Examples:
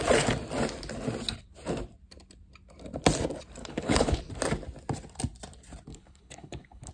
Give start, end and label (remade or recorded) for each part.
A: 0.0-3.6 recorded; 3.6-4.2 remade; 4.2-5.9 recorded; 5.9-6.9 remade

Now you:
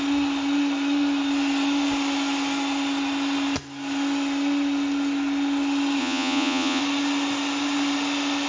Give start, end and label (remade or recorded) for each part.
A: 0.0-6.0 recorded; 6.0-6.8 remade; 6.8-8.5 recorded

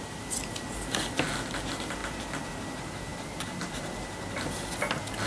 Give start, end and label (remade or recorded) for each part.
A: 0.0-5.3 recorded

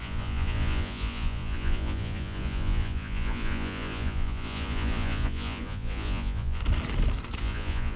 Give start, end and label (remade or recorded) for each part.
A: 0.0-6.6 remade; 6.6-7.4 recorded; 7.4-8.0 remade

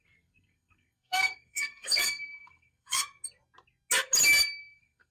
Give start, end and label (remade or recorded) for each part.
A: 0.0-3.0 remade; 3.0-4.6 recorded; 4.6-5.1 remade

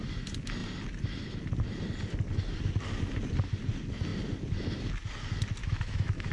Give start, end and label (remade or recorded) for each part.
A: 0.0-5.6 recorded; 5.6-6.3 remade

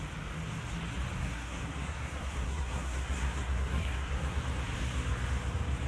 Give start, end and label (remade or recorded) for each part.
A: 0.0-1.2 recorded; 1.2-4.4 remade; 4.4-5.9 recorded